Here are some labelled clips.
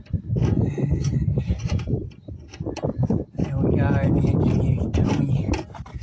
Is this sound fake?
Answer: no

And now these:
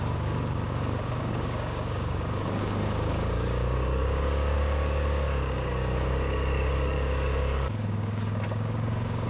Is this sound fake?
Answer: yes